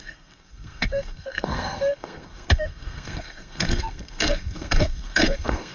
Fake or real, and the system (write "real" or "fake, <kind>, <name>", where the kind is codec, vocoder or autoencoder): fake, codec, SNAC